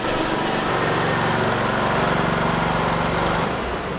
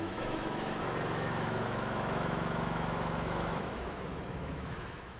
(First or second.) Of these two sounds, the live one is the first